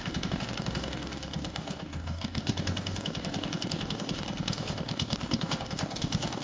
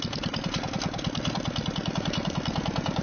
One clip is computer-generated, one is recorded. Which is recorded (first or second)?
second